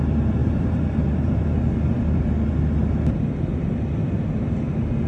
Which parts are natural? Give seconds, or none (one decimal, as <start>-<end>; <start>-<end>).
0.0-0.4; 2.2-5.1